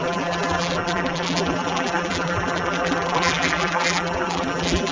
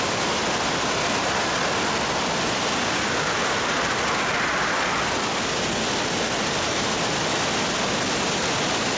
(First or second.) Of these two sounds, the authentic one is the second